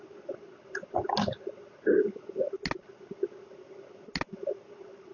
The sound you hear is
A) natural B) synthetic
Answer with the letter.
A